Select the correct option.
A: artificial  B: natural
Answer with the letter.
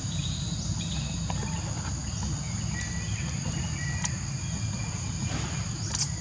B